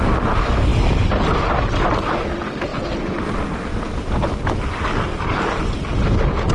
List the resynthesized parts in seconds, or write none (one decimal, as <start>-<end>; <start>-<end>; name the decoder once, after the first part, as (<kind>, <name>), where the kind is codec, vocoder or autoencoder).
none